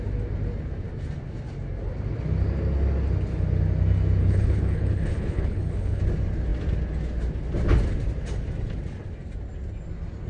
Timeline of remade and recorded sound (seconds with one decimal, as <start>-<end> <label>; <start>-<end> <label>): 0.0-4.2 recorded; 4.2-6.0 remade; 6.0-10.3 recorded